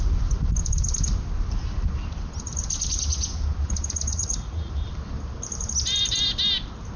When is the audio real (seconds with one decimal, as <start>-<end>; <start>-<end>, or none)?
0.0-4.1; 4.7-7.0